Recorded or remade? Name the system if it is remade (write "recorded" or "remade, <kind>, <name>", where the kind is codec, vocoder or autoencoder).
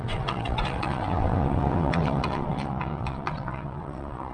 remade, vocoder, WaveNeXt